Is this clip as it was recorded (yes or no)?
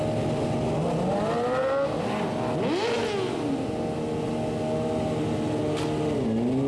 yes